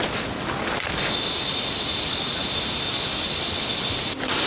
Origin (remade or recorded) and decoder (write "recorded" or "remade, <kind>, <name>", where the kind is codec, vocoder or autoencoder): recorded